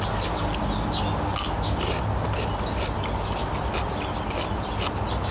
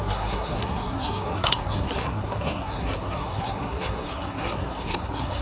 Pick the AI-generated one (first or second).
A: second